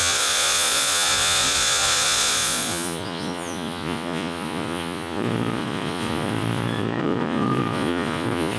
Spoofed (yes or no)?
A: yes